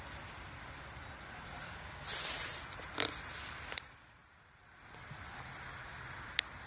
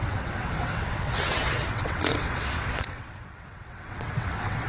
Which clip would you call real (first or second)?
first